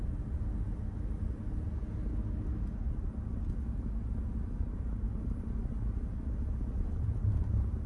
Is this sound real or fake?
real